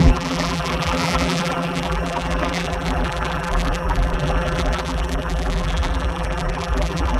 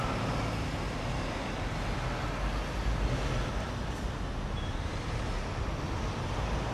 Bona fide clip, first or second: second